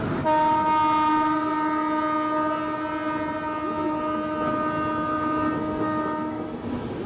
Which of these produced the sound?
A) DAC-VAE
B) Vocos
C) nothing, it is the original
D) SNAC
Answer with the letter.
C